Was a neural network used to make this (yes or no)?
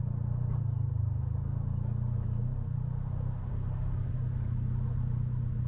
no